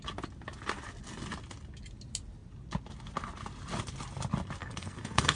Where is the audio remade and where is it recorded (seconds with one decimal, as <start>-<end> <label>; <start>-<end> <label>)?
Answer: 0.0-4.6 recorded; 4.6-5.4 remade